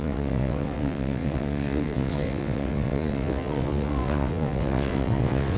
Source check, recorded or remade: remade